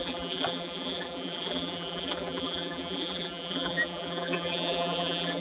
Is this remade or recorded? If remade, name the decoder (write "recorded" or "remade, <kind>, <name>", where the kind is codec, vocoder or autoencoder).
remade, vocoder, BigVGAN v2